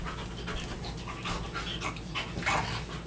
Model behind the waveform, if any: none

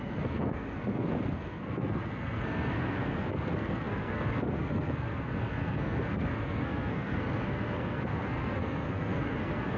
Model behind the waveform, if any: codec, SNAC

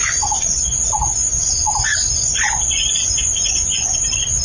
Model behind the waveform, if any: vocoder, Vocos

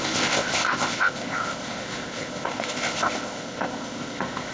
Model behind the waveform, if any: codec, ZipCodec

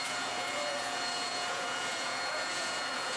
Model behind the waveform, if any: vocoder, Vocos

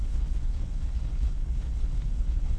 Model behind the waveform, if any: codec, HILCodec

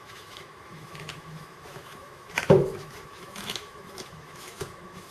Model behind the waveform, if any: autoencoder, DAC-VAE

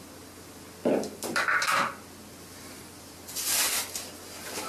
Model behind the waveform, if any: none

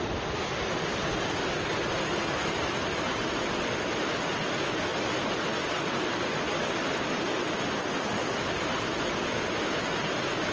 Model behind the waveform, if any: none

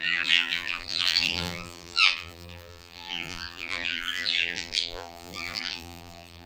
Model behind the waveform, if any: vocoder, BigVGAN v2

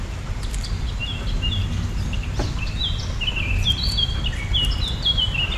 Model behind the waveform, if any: none